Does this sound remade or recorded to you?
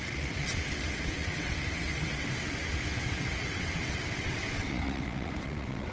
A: remade